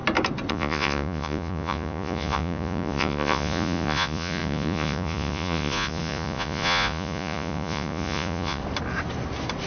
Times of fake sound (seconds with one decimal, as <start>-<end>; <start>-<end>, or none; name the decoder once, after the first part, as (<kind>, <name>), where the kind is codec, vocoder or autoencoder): 0.5-8.6 (vocoder, Vocos)